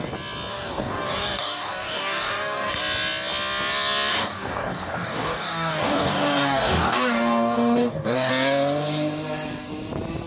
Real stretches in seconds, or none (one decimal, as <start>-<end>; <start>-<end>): 0.0-0.5; 2.7-4.1; 8.3-10.3